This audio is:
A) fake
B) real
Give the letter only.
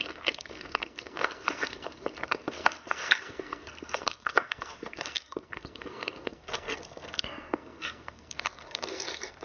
A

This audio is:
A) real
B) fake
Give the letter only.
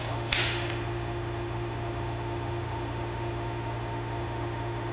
B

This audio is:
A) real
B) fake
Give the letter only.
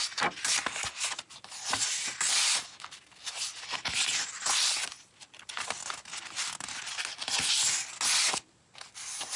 A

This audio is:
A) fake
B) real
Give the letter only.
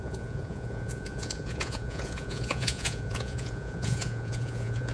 A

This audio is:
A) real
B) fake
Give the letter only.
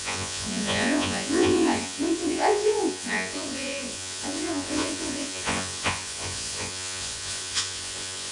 B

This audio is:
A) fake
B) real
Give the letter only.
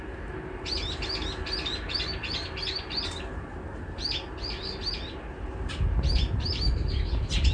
B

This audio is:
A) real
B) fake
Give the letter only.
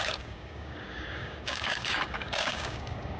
B